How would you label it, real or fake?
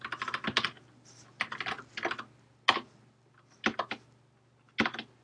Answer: real